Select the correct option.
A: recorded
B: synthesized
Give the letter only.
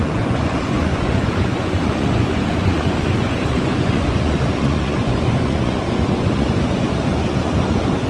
B